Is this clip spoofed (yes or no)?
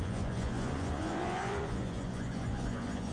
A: yes